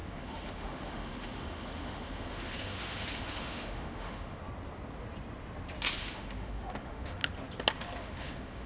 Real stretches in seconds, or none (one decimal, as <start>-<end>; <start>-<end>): 4.4-6.0; 7.2-8.0